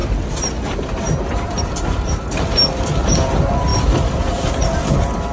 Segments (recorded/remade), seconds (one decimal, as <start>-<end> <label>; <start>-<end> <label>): 0.0-2.4 remade; 2.4-3.7 recorded; 3.7-4.6 remade; 4.6-5.3 recorded